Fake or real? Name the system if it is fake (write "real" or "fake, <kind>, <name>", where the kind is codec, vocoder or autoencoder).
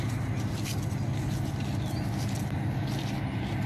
real